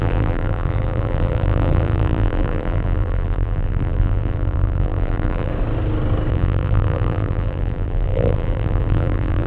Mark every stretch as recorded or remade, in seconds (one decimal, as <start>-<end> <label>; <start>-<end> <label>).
0.0-5.5 remade; 5.5-6.3 recorded; 6.3-9.5 remade